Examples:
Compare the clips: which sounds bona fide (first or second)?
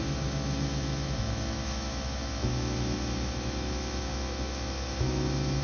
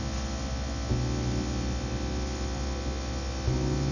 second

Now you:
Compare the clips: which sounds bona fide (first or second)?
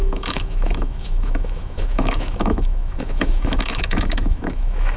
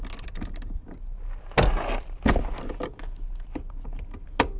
second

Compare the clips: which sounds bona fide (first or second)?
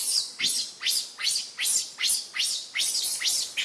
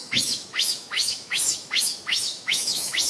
first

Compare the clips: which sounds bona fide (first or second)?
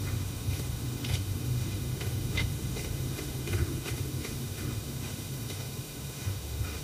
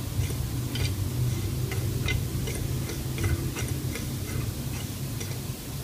second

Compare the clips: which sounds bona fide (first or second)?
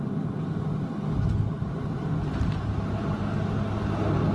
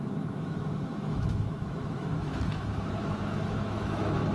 first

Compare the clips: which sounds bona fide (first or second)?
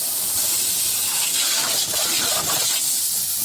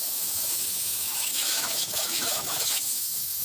first